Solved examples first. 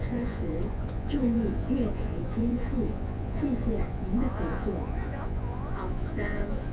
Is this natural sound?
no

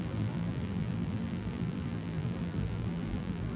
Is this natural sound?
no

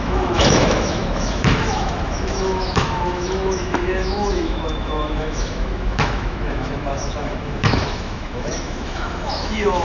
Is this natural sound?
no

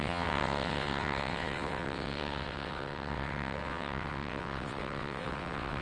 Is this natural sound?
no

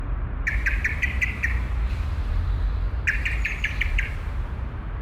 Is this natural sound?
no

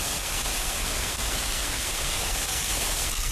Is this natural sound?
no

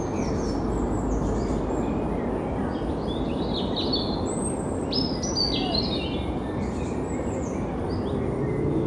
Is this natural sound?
yes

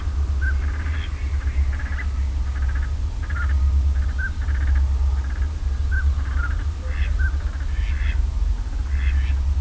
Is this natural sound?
yes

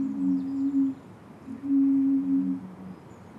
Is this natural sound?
yes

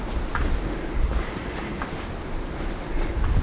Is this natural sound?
yes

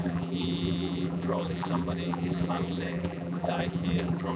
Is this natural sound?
no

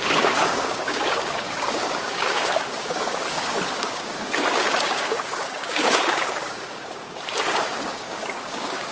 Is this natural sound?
no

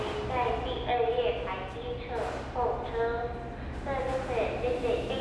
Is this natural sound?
yes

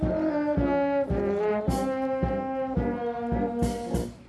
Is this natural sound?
yes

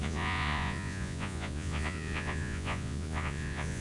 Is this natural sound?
no